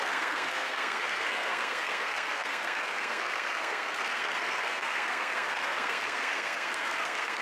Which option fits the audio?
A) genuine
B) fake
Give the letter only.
B